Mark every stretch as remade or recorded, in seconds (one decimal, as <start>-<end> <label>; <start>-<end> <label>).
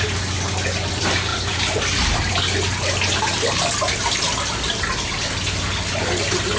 0.0-6.6 recorded